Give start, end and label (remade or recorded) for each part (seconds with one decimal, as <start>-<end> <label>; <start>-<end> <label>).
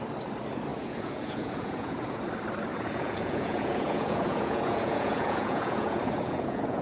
0.0-0.7 recorded; 0.7-2.2 remade; 2.2-2.7 recorded; 2.7-6.8 remade